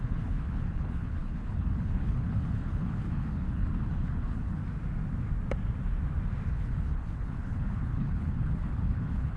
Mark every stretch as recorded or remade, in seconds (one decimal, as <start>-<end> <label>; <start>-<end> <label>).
0.0-4.6 remade; 4.6-6.5 recorded; 6.5-9.4 remade